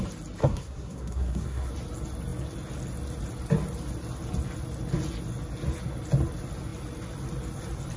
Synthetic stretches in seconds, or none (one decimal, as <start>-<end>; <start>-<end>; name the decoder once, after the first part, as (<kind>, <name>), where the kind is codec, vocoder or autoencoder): 0.4-1.7 (codec, SNAC)